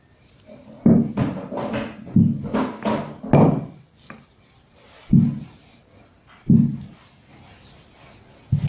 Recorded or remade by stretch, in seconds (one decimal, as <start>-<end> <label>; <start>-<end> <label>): 0.0-8.7 recorded